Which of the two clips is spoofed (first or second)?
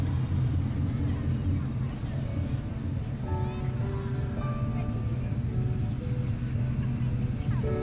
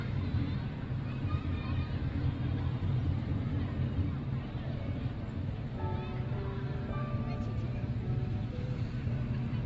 second